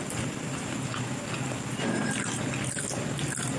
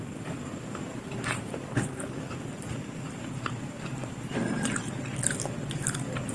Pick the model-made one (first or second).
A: second